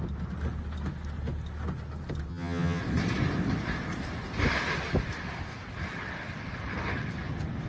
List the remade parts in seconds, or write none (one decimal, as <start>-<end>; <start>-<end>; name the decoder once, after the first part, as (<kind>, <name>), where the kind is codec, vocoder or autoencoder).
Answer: 2.3-2.8 (vocoder, HiFi-GAN)